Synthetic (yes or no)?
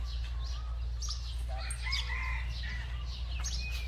no